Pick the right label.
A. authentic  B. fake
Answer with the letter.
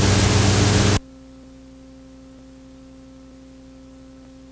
A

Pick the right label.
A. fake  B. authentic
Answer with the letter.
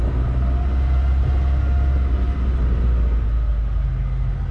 B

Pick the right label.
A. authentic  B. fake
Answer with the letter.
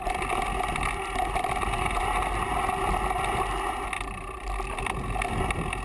A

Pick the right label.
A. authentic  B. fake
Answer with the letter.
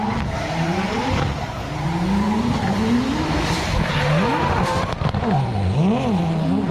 A